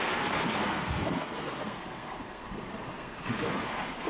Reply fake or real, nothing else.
fake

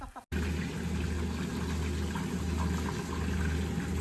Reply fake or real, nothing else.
real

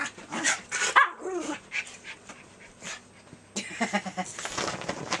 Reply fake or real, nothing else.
real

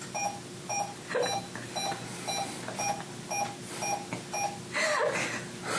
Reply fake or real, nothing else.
real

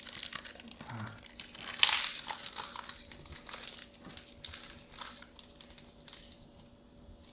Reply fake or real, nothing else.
real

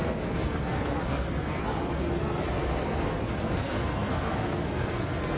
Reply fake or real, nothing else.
fake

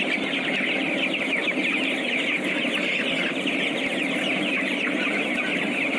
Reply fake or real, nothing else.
real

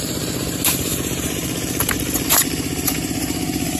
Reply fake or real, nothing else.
fake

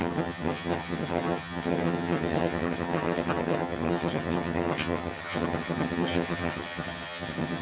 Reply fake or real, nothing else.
fake